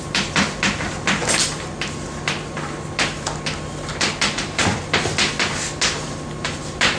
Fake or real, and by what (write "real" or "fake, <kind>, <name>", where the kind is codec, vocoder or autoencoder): real